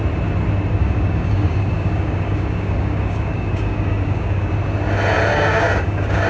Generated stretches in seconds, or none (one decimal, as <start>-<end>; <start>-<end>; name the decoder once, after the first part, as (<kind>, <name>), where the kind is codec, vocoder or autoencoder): 0.7-4.5 (codec, DAC); 5.3-6.3

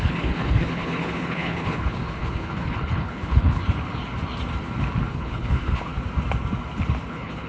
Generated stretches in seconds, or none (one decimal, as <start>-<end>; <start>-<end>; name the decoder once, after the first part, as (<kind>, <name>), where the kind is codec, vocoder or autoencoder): 0.0-3.6 (codec, HILCodec); 5.1-5.9; 7.1-7.5

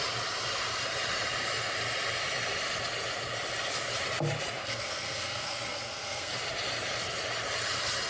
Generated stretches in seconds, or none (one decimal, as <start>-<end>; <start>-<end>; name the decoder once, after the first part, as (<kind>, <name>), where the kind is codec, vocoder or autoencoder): 4.6-6.3 (codec, SNAC)

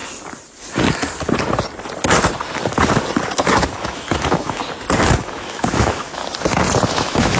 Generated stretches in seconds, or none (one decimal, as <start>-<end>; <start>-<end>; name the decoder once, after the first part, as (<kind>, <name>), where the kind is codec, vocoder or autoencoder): 3.5-4.6 (autoencoder, DAC-VAE); 5.2-6.2; 6.9-7.4

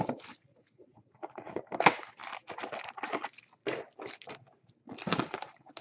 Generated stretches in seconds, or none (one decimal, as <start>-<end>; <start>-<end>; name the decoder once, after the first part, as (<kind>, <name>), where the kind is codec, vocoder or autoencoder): 0.5-1.6 (vocoder, Vocos)